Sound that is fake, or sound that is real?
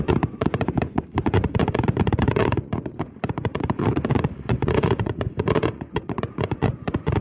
fake